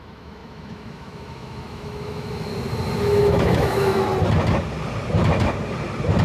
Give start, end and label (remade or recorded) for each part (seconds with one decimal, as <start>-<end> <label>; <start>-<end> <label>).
0.0-2.5 remade; 2.5-3.0 recorded; 3.0-4.1 remade; 4.1-6.2 recorded

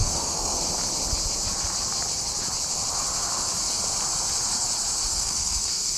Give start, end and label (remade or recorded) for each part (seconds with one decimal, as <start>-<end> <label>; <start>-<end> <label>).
0.0-0.6 remade; 0.6-5.1 recorded; 5.1-6.0 remade

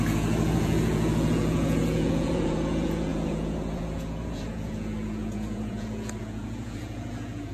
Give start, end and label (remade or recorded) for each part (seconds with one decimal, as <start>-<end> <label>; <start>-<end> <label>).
0.0-7.5 remade

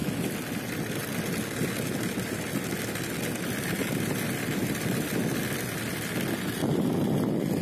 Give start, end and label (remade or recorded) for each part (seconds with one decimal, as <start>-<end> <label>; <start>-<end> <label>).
0.0-7.6 recorded

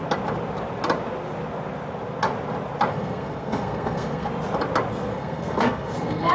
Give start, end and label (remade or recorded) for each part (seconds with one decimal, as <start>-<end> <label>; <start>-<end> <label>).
0.0-2.9 recorded; 2.9-4.3 remade; 4.3-4.9 recorded; 4.9-6.3 remade